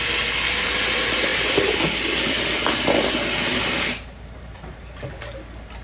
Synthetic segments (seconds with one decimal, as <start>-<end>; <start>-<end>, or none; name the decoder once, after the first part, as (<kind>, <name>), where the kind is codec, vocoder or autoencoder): 3.5-5.1 (vocoder, BigVGAN v2)